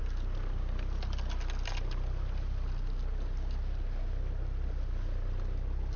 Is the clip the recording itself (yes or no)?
yes